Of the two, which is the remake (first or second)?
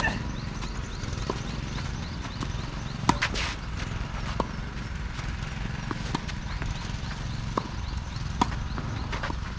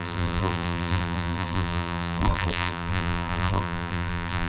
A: second